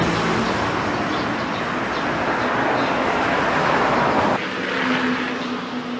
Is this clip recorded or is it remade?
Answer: recorded